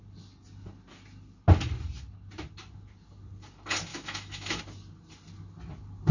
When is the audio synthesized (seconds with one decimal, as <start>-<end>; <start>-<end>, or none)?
3.9-4.6